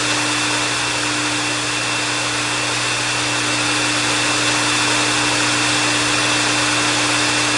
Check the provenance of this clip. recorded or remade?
recorded